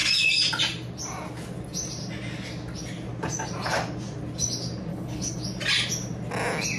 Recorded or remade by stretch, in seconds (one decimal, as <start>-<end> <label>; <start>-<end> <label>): 0.0-4.9 recorded; 4.9-5.4 remade; 5.4-6.8 recorded